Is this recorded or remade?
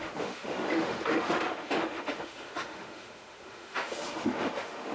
remade